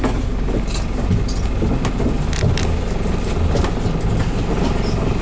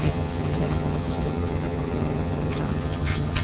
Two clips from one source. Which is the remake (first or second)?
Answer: second